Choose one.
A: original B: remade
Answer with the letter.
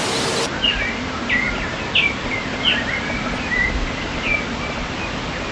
A